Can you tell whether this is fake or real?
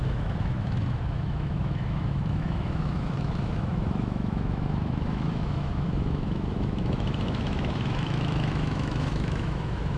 fake